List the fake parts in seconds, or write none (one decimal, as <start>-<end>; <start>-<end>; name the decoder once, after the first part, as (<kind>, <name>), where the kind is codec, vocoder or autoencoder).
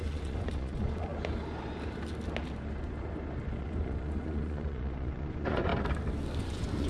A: 0.0-1.1 (vocoder, Vocos); 3.6-5.7; 6.4-6.9